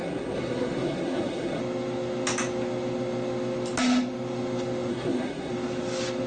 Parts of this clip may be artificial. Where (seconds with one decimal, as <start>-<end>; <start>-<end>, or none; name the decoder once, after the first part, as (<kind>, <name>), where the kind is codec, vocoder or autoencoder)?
0.0-1.6 (codec, SNAC); 4.9-5.5